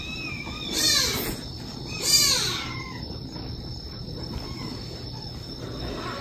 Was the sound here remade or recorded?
recorded